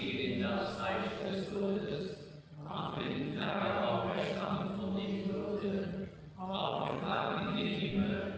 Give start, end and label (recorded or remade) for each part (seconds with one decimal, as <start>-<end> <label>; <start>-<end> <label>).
0.0-1.2 recorded; 1.2-3.6 remade; 3.6-4.1 recorded; 4.1-4.8 remade; 4.8-5.6 recorded; 5.6-7.9 remade; 7.9-8.4 recorded